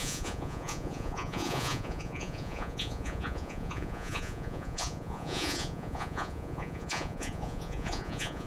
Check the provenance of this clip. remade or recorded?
remade